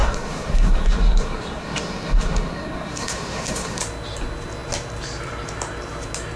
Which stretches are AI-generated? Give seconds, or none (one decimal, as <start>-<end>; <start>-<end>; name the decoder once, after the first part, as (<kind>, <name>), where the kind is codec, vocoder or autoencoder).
0.0-3.8 (codec, SNAC)